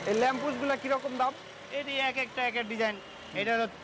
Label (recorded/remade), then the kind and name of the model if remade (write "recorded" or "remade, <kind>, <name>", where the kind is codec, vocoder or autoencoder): recorded